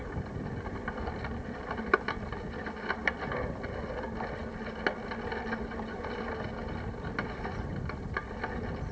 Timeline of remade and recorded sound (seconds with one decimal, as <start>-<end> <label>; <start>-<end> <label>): 0.0-8.9 recorded